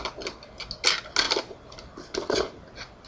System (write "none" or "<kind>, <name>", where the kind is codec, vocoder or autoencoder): none